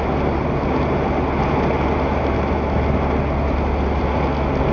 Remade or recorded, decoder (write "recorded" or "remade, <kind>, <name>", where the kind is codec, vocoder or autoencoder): recorded